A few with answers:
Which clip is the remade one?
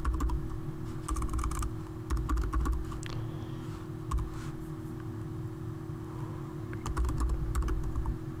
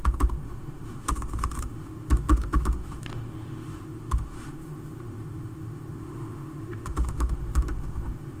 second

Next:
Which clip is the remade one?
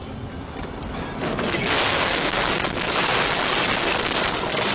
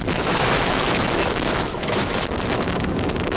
second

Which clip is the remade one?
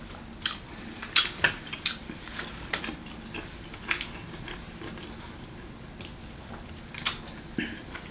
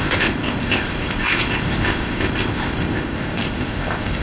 second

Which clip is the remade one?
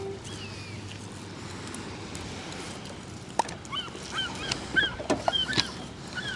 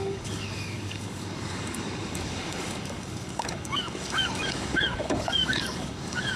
second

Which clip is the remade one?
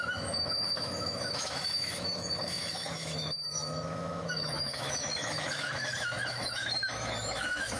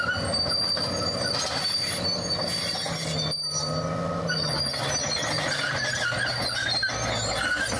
first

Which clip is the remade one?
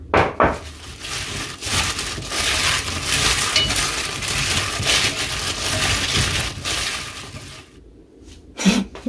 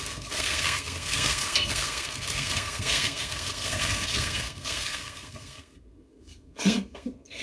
second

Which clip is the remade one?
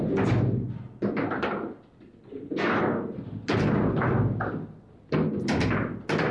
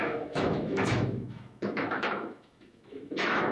second